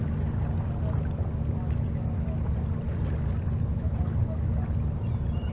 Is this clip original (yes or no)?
yes